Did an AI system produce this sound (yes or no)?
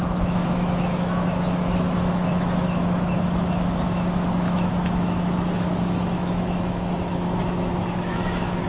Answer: yes